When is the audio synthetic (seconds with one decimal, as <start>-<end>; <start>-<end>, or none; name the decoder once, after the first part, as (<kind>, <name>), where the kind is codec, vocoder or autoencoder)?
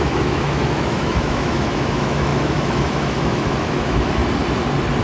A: 0.0-4.2 (autoencoder, DAC-VAE)